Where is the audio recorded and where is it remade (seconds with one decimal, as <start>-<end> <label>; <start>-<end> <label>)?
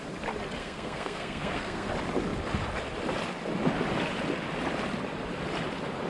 0.0-0.6 recorded; 0.6-1.9 remade; 1.9-6.1 recorded